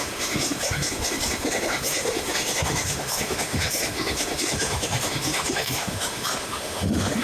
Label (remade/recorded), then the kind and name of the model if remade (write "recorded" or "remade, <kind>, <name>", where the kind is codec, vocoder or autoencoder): remade, autoencoder, DAC-VAE